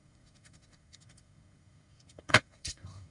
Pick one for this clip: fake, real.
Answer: fake